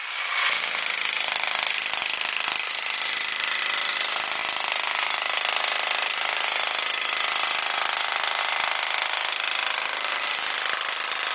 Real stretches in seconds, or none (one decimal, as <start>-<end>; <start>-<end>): 0.0-11.3